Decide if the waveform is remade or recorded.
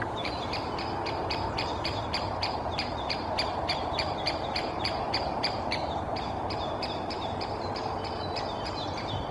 remade